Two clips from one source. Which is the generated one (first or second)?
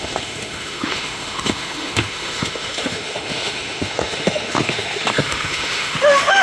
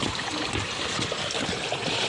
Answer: first